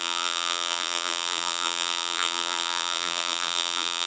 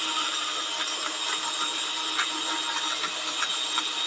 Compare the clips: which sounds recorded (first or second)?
second